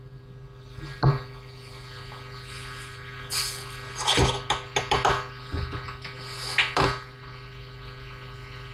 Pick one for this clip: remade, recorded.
recorded